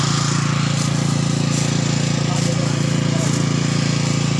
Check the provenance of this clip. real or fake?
real